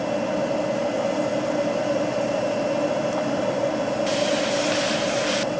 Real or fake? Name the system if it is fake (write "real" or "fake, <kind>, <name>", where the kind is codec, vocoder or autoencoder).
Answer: real